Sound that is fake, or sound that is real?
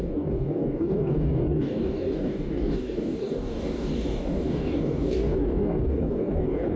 fake